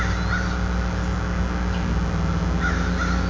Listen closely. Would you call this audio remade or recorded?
recorded